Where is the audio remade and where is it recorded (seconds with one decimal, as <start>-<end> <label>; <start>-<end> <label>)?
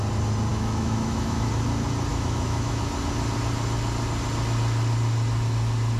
0.0-0.5 recorded; 0.5-1.5 remade; 1.5-2.1 recorded; 2.1-2.8 remade; 2.8-6.0 recorded